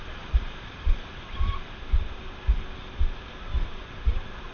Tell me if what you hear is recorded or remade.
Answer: recorded